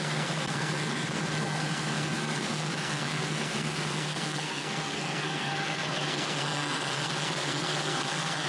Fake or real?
fake